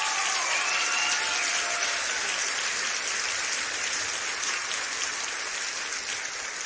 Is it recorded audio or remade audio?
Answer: recorded